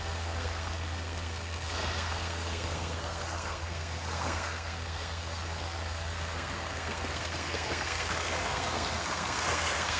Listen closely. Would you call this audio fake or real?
fake